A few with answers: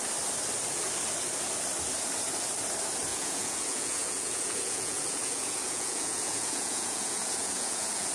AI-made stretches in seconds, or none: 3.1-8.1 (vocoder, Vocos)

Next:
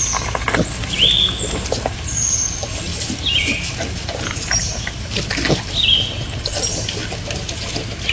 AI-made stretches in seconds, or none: 2.9-3.7 (vocoder, BigVGAN v2)

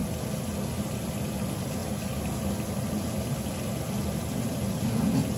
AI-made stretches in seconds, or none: none

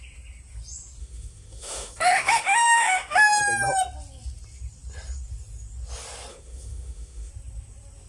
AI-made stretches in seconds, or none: 1.0-3.4 (autoencoder, DAC-VAE); 6.3-7.3

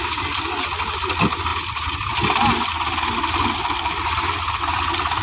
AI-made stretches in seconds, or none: none

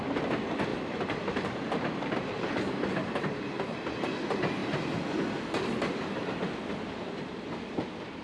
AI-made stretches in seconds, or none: 0.7-2.9 (vocoder, BigVGAN v2)